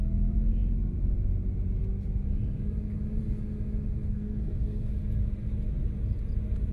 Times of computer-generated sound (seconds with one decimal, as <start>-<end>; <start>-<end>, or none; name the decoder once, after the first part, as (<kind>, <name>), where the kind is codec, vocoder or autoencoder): 3.9-4.9 (codec, SNAC)